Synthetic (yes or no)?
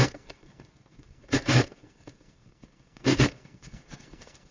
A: yes